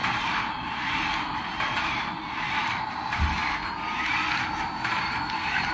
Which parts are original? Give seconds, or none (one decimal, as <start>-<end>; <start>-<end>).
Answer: 3.4-4.6